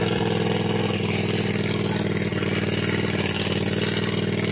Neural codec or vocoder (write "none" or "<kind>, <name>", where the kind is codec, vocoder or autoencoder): none